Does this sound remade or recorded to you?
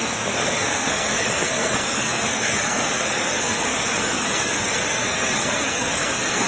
remade